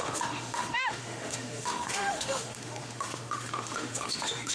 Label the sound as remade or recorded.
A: remade